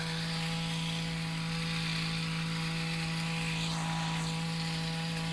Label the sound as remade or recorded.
recorded